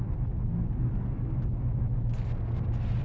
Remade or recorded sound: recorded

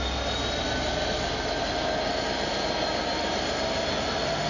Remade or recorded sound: recorded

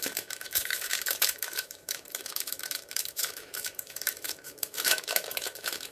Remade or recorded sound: remade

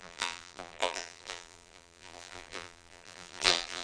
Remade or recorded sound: remade